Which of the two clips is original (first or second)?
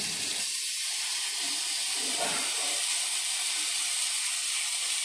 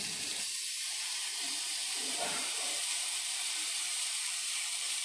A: first